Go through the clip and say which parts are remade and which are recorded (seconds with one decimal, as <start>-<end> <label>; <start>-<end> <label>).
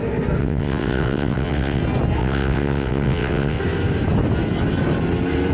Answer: 0.0-0.4 recorded; 0.4-1.8 remade; 1.8-2.2 recorded; 2.2-3.6 remade; 3.6-5.5 recorded